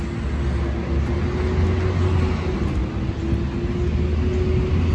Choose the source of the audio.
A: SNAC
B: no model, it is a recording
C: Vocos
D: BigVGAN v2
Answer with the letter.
B